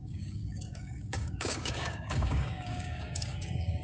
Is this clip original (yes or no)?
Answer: no